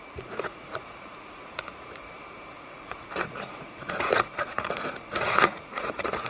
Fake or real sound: fake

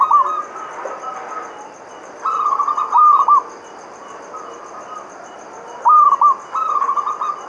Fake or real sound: real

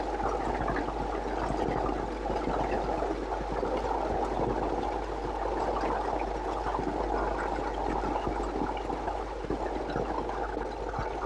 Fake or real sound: real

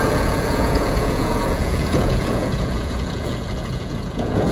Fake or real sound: fake